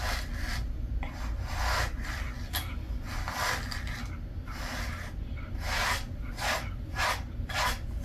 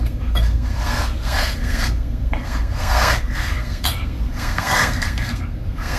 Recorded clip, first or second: first